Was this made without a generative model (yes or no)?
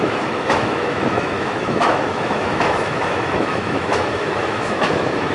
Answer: no